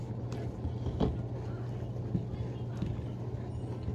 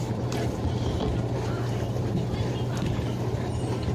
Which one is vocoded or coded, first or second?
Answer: second